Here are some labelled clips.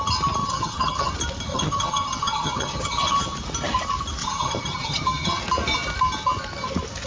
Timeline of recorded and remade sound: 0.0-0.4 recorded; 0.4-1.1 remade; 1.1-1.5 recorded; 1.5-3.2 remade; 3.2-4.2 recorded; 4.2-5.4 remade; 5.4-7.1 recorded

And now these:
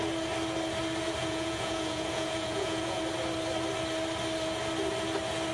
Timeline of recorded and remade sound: 0.0-1.2 recorded; 1.2-3.0 remade; 3.0-5.5 recorded

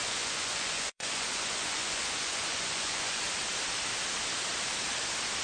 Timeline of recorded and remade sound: 0.0-3.2 remade; 3.2-5.4 recorded

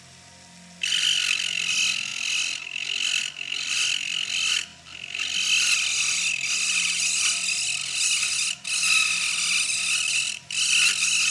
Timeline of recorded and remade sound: 0.0-11.3 recorded

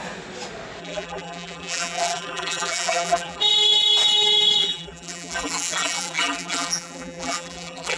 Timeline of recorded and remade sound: 0.0-0.8 recorded; 0.8-3.4 remade; 3.4-4.6 recorded; 4.6-8.0 remade

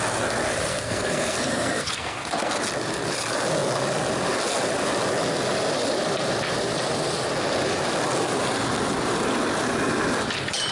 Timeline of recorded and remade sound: 0.0-0.7 recorded; 0.7-2.5 remade; 2.5-10.7 recorded

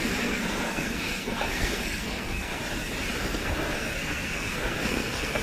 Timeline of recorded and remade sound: 0.0-2.6 remade; 2.6-3.2 recorded; 3.2-5.4 remade